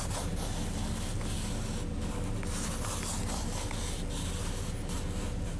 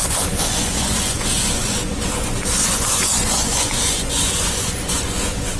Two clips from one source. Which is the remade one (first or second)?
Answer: second